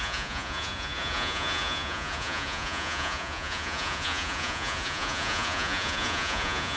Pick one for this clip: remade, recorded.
remade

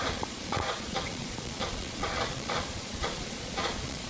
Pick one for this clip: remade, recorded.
remade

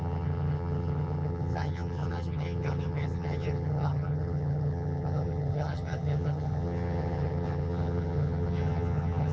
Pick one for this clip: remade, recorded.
remade